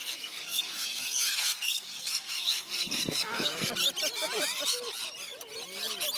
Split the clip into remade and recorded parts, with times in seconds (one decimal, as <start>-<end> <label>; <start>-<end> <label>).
0.0-3.7 remade; 3.7-6.2 recorded